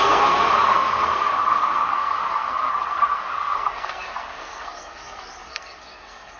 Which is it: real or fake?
fake